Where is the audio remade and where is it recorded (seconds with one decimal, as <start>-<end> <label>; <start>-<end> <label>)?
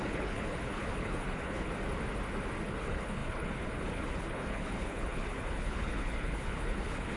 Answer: 0.0-1.7 remade; 1.7-2.7 recorded; 2.7-7.2 remade